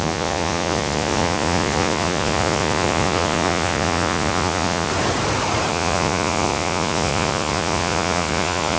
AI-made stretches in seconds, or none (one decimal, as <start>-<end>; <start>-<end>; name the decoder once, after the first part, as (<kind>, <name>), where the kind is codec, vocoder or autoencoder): 0.0-4.9 (vocoder, Vocos); 5.7-8.8